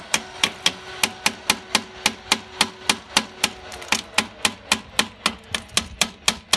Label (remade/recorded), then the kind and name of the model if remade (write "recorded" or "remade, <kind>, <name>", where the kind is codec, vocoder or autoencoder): recorded